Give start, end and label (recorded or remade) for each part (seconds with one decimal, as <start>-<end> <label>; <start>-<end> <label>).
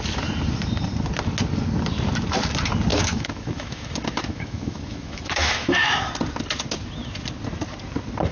0.0-2.9 recorded; 2.9-6.1 remade; 6.1-8.3 recorded